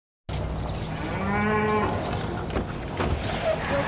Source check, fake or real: real